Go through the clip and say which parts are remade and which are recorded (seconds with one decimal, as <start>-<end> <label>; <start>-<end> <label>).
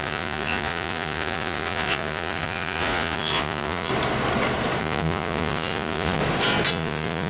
0.0-3.9 remade; 3.9-4.8 recorded; 4.8-6.2 remade; 6.2-6.7 recorded; 6.7-7.3 remade